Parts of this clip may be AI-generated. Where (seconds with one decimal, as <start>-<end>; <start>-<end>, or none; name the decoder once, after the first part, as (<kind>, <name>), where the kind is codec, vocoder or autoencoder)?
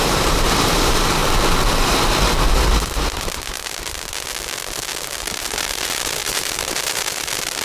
0.0-1.2 (vocoder, BigVGAN v2); 5.2-7.6